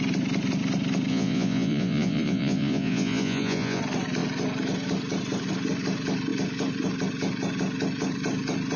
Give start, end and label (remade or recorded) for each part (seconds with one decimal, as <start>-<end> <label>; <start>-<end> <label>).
0.0-1.1 recorded; 1.1-3.8 remade; 3.8-8.8 recorded